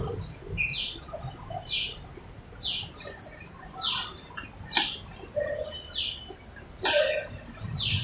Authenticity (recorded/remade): recorded